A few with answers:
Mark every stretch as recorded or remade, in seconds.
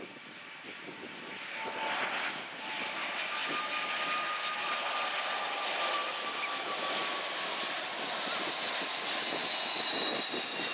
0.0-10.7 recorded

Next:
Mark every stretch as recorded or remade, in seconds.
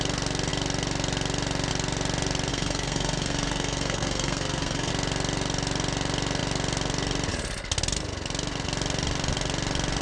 0.0-2.5 recorded; 2.5-4.9 remade; 4.9-10.0 recorded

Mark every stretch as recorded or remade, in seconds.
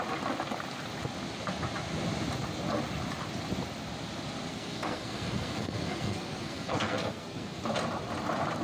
0.0-4.5 recorded; 4.5-7.6 remade; 7.6-8.6 recorded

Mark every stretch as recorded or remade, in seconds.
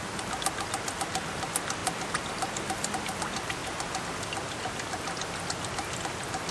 0.0-6.5 recorded